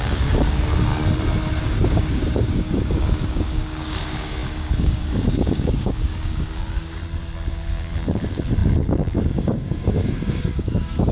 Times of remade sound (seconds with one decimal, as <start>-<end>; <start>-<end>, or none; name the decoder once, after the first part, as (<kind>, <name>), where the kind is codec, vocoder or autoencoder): 0.0-0.9 (codec, DAC); 1.6-7.0; 7.5-11.1